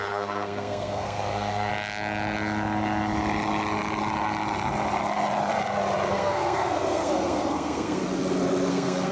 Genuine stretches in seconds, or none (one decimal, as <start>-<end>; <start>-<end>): 1.7-6.1; 8.0-8.7